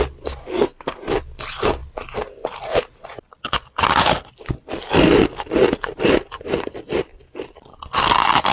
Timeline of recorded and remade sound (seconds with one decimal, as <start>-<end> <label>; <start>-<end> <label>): 0.0-0.4 recorded; 0.4-1.0 remade; 1.0-8.5 recorded